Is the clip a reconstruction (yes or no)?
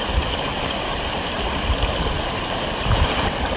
no